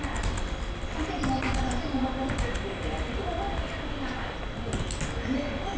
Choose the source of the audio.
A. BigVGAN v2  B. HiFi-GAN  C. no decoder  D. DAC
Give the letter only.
C